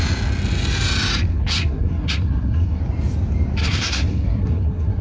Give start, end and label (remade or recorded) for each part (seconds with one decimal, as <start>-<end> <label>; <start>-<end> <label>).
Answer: 0.0-1.3 recorded; 1.3-2.8 remade; 2.8-3.6 recorded; 3.6-5.0 remade